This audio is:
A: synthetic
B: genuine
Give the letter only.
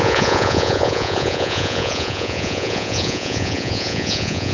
A